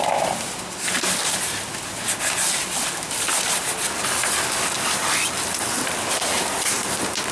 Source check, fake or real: real